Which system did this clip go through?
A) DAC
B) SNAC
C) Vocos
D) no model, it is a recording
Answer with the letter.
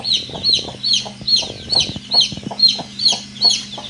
D